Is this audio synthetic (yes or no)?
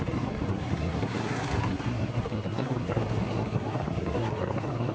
yes